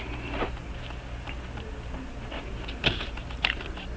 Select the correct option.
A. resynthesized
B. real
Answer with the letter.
B